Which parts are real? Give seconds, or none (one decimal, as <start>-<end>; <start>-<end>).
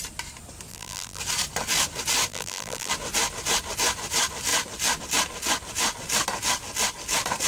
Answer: 0.0-0.7; 1.2-2.3; 2.9-7.5